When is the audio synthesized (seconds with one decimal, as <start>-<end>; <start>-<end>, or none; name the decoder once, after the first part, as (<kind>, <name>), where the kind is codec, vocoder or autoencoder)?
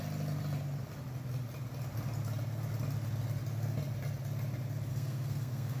4.9-5.8 (codec, SNAC)